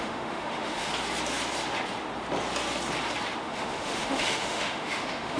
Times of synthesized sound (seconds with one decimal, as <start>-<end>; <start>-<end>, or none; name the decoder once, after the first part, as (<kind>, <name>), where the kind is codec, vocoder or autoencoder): 0.0-0.9 (autoencoder, DAC-VAE); 3.4-5.4